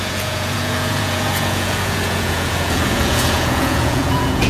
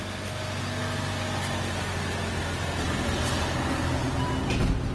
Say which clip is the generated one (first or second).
first